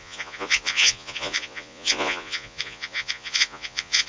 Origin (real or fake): fake